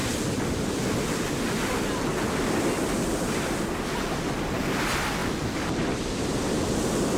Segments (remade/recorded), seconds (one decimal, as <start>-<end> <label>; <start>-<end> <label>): 0.0-5.2 recorded; 5.2-6.4 remade; 6.4-7.2 recorded